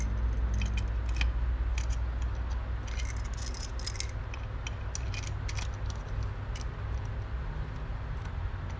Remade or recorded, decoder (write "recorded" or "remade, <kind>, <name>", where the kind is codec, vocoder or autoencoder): recorded